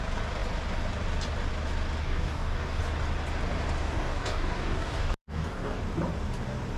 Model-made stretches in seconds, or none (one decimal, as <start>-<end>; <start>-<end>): 2.0-2.8; 3.8-5.8